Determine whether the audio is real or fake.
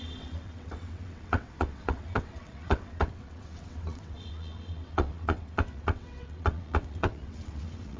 fake